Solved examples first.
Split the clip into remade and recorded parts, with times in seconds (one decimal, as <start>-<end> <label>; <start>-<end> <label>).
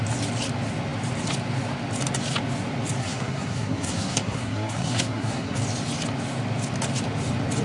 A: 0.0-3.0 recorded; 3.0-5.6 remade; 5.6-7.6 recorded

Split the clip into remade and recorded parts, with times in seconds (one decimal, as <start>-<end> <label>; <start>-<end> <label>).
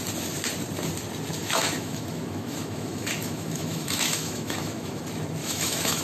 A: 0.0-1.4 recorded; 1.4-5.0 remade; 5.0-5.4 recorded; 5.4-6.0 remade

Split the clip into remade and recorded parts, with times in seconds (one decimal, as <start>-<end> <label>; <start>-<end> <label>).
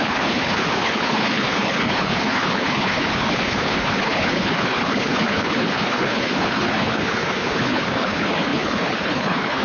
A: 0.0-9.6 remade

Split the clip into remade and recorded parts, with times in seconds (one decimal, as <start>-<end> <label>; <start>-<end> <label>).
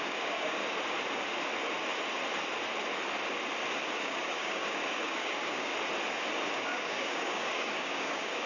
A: 0.0-0.6 remade; 0.6-4.0 recorded; 4.0-5.7 remade; 5.7-6.5 recorded; 6.5-8.5 remade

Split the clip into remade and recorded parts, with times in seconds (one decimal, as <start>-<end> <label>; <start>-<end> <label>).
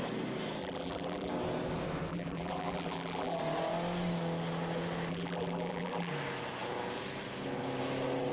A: 0.0-0.6 recorded; 0.6-1.3 remade; 1.3-2.1 recorded; 2.1-3.4 remade; 3.4-5.1 recorded; 5.1-6.1 remade; 6.1-8.3 recorded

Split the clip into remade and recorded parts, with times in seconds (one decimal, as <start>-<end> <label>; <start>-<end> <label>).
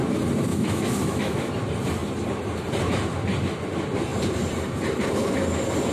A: 0.0-0.5 recorded; 0.5-1.5 remade; 1.5-5.9 recorded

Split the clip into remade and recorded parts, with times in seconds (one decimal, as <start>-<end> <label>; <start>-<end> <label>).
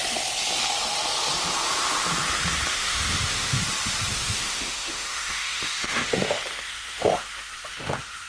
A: 0.0-2.7 recorded; 2.7-3.6 remade; 3.6-4.1 recorded; 4.1-8.3 remade